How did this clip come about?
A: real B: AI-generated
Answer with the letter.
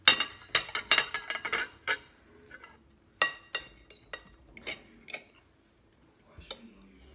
A